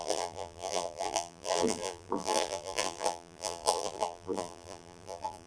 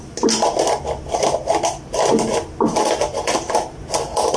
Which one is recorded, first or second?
second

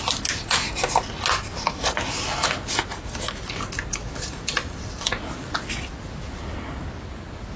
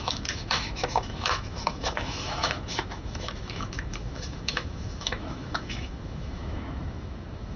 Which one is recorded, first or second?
first